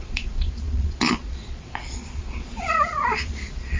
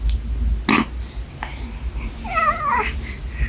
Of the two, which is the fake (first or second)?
first